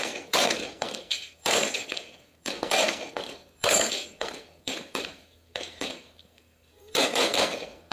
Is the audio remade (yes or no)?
yes